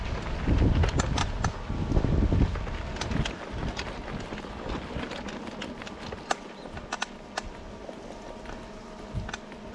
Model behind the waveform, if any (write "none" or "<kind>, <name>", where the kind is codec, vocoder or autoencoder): none